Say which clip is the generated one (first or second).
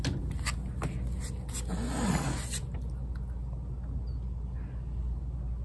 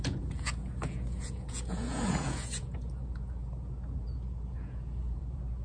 second